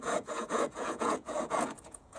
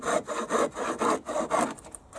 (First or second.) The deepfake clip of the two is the first